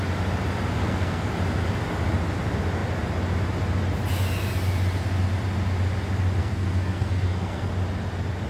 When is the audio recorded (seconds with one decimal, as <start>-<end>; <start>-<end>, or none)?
0.0-0.8; 1.3-6.4; 7.7-8.5